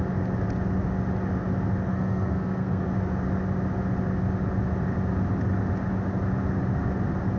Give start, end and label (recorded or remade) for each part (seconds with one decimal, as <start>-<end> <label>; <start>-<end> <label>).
0.0-1.9 recorded; 1.9-2.9 remade; 2.9-7.4 recorded